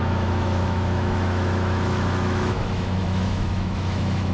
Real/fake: fake